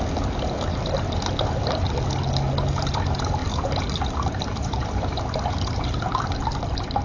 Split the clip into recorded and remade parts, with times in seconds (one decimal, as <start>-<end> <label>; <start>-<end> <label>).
0.0-7.0 recorded